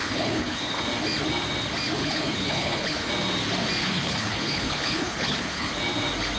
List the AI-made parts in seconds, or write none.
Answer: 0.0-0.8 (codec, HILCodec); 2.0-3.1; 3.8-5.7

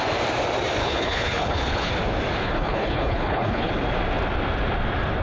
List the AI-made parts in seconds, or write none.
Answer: 0.8-1.9 (codec, HILCodec); 2.4-3.7